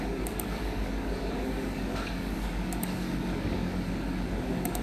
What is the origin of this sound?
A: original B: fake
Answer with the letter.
B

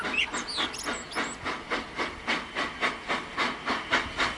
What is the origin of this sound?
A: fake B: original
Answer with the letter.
B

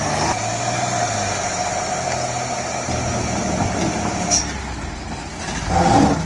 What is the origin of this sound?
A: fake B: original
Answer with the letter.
B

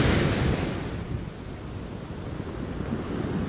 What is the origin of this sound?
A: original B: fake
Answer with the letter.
A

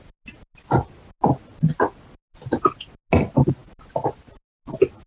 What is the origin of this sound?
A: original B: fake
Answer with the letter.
A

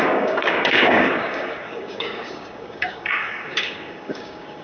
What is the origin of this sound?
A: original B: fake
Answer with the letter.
B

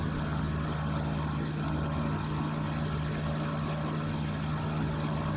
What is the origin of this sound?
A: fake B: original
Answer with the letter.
B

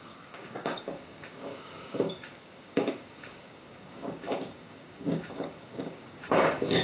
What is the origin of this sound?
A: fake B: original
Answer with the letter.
A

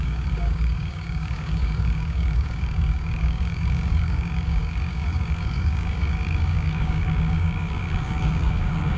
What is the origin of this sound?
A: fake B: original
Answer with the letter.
A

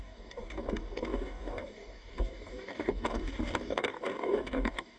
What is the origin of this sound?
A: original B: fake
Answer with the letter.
B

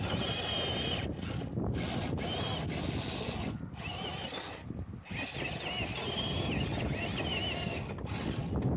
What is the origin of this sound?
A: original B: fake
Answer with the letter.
A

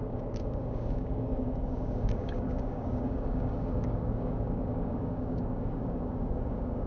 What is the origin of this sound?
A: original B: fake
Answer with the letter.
B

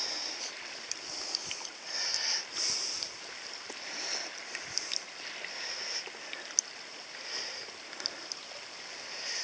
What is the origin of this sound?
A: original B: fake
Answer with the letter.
A